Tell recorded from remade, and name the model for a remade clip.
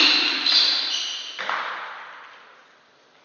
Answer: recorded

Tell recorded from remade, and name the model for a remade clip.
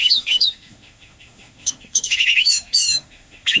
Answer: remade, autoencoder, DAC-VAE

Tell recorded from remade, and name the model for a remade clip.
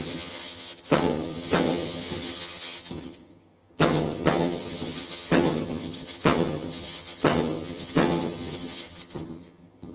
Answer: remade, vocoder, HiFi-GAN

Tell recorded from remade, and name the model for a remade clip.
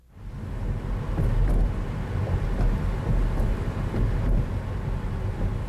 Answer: recorded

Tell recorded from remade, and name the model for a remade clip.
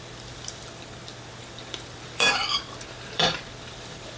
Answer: remade, vocoder, BigVGAN v2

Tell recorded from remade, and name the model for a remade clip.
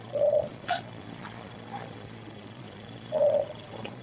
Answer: remade, vocoder, Vocos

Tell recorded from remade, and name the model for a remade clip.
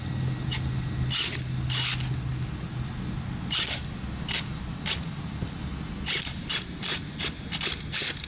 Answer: recorded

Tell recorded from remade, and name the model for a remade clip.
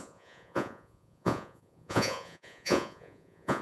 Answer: remade, vocoder, Vocos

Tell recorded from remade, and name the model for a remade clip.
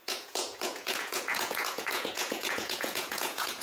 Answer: remade, vocoder, Vocos